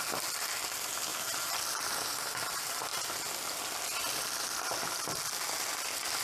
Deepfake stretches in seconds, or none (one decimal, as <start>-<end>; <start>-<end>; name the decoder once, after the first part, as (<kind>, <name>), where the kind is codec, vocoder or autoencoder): none